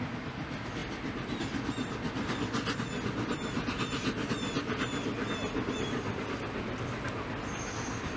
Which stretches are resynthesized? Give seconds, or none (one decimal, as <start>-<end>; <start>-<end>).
none